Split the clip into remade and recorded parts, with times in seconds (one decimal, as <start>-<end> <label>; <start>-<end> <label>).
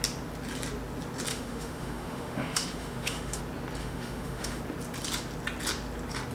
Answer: 0.0-1.3 recorded; 1.3-3.4 remade; 3.4-3.8 recorded; 3.8-4.6 remade; 4.6-6.3 recorded